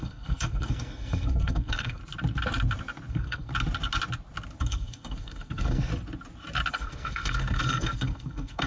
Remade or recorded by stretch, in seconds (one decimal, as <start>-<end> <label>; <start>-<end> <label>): 0.0-2.0 remade; 2.0-3.1 recorded; 3.1-3.5 remade; 3.5-4.6 recorded; 4.6-5.9 remade; 5.9-6.7 recorded; 6.7-8.7 remade